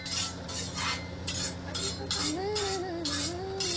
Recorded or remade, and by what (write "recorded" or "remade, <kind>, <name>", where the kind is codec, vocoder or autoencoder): recorded